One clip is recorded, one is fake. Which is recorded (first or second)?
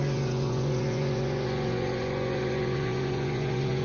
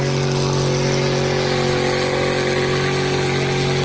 second